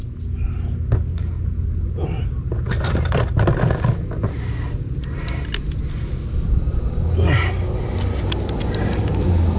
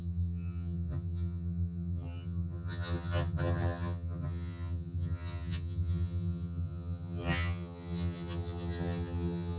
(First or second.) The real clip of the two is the first